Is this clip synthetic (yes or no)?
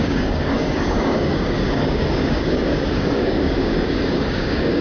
yes